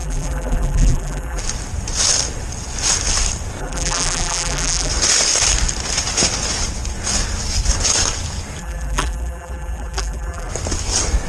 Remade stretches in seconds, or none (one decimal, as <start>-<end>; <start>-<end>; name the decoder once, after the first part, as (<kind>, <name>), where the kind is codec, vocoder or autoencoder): 0.0-1.4 (vocoder, BigVGAN v2); 3.6-4.9; 8.6-10.5